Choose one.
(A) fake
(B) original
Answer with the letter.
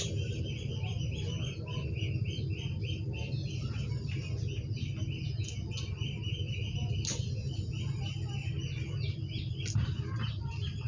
B